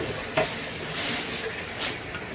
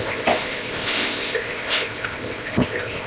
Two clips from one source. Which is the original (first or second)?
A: first